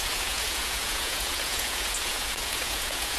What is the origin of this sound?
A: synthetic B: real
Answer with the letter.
A